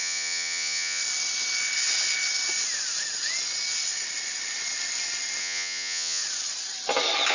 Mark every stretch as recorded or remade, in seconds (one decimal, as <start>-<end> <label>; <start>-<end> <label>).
0.0-1.0 remade; 1.0-5.4 recorded; 5.4-6.2 remade; 6.2-7.3 recorded